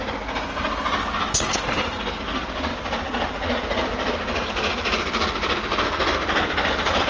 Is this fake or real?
real